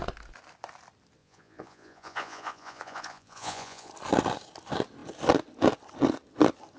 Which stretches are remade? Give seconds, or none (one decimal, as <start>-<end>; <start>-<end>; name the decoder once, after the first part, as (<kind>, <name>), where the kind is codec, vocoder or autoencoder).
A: 1.2-3.9 (vocoder, Vocos)